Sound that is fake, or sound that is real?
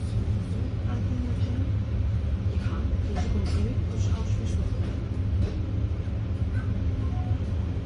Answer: real